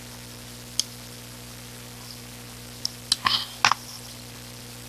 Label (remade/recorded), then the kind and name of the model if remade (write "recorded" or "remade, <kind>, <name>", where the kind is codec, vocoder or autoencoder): recorded